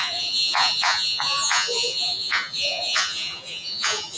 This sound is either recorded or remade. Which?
remade